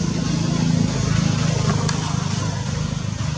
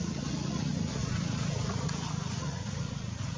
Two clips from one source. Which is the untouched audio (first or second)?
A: first